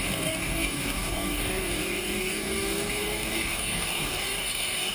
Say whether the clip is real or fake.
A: fake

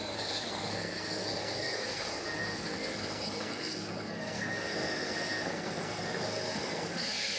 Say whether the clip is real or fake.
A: fake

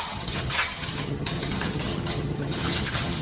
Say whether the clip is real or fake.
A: fake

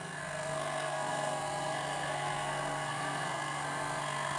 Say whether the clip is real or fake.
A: fake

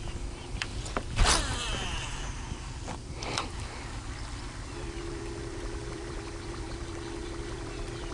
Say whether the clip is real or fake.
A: fake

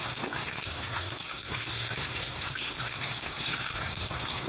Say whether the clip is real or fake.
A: fake